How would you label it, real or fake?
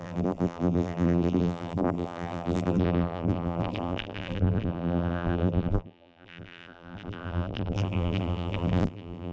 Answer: fake